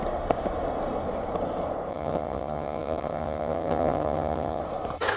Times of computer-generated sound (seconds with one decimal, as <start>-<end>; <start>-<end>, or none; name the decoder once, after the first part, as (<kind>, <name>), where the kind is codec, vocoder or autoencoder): 1.9-4.6 (vocoder, HiFi-GAN)